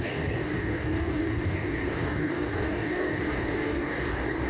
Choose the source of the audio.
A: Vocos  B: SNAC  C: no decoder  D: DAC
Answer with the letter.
D